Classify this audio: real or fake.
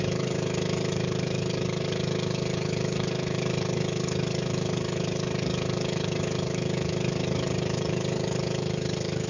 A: fake